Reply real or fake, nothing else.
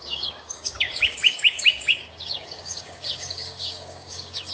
fake